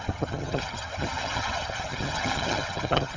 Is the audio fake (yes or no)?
yes